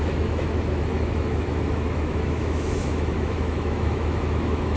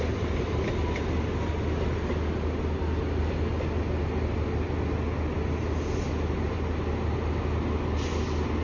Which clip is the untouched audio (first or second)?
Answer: second